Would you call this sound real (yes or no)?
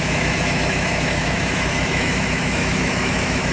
no